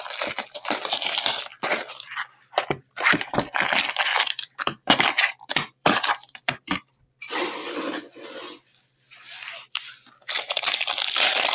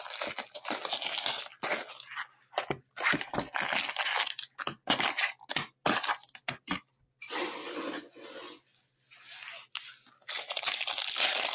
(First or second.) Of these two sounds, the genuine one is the second